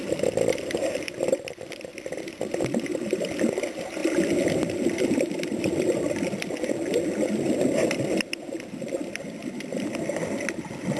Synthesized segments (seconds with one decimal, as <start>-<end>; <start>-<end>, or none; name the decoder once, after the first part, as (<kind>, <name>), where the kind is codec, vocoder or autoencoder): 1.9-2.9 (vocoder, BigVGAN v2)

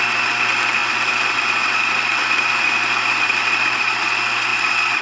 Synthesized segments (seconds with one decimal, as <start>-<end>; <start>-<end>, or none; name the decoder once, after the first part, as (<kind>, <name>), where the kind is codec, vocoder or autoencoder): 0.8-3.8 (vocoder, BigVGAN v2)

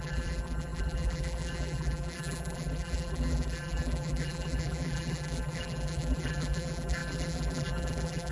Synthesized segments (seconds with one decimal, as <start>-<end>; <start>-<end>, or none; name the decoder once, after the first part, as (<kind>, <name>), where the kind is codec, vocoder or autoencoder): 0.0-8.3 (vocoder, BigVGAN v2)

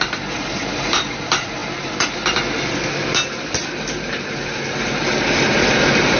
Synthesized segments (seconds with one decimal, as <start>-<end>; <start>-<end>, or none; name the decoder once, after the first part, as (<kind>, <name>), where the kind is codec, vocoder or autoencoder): 0.0-1.6 (vocoder, BigVGAN v2); 4.3-6.2

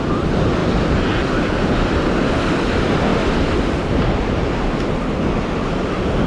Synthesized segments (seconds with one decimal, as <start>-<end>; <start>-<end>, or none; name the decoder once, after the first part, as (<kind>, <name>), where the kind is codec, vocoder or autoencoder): 0.6-2.7 (vocoder, BigVGAN v2); 3.1-3.7